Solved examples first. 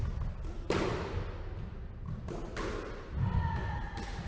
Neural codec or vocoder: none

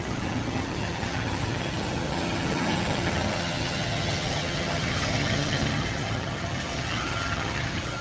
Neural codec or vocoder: vocoder, HiFi-GAN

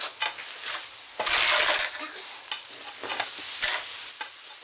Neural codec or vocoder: none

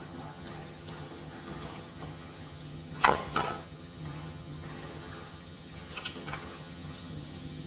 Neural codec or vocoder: vocoder, HiFi-GAN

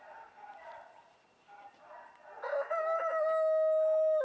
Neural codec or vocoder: none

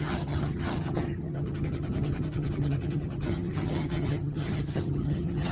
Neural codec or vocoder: vocoder, HiFi-GAN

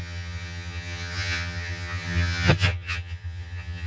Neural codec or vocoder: vocoder, HiFi-GAN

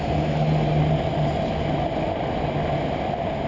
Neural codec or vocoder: none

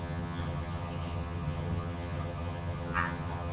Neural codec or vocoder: vocoder, HiFi-GAN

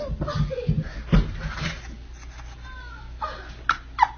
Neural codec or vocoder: none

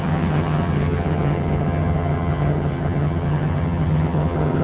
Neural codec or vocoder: vocoder, HiFi-GAN